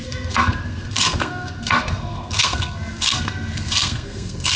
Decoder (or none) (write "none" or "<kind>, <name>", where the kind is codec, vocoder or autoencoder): codec, SNAC